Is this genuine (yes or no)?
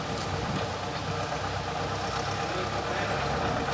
yes